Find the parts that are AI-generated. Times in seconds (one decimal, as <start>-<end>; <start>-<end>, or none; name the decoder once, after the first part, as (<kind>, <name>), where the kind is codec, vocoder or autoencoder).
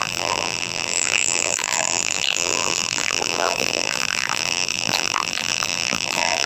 0.0-6.5 (vocoder, BigVGAN v2)